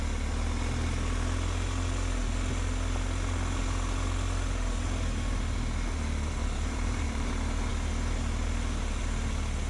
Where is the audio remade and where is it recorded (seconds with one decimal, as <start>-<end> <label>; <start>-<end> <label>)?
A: 0.0-6.4 recorded; 6.4-7.3 remade; 7.3-9.7 recorded